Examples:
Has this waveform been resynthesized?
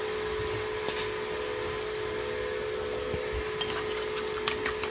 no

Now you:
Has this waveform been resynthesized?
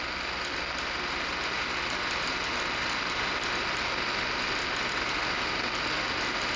no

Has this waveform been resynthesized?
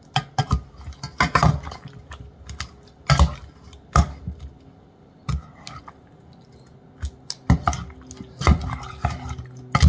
no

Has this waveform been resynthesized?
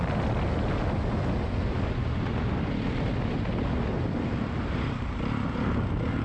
no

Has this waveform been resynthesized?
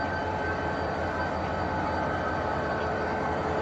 yes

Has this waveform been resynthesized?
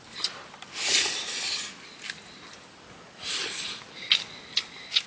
no